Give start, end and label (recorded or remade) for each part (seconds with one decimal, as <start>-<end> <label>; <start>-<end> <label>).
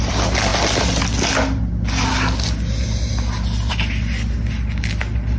0.0-5.4 recorded